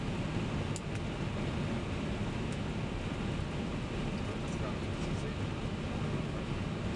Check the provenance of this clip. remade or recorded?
recorded